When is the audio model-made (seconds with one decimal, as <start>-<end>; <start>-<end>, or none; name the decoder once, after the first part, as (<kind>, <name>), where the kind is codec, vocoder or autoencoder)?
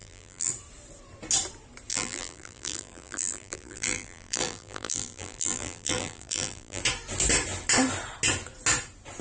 0.0-0.5 (vocoder, BigVGAN v2); 1.9-6.8